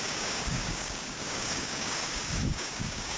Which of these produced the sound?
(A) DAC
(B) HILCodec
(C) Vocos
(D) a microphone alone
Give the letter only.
A